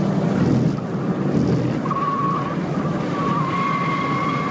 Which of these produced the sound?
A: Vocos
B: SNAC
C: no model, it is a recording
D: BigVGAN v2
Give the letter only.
C